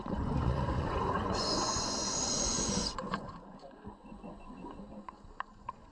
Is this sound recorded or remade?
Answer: remade